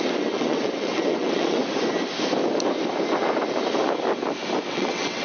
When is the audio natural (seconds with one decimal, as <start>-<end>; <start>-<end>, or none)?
1.6-4.7